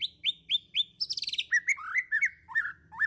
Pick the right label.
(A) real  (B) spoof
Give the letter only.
A